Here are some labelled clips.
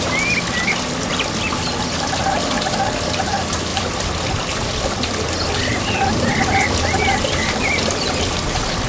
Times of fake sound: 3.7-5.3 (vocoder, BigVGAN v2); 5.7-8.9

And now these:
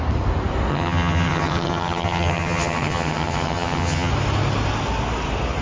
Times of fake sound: 0.7-4.1 (vocoder, HiFi-GAN)

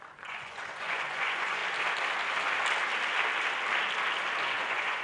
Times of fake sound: 0.0-1.6 (vocoder, Vocos); 4.4-5.0